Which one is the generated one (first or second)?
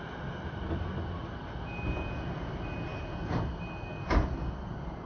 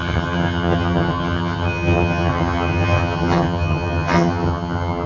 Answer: second